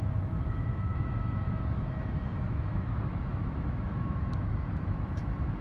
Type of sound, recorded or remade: remade